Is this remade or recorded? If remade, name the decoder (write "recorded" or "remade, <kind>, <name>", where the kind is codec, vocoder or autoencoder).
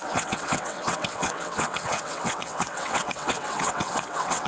remade, vocoder, WaveNeXt